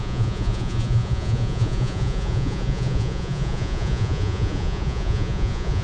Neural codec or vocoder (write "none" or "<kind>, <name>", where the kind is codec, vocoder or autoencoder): vocoder, Vocos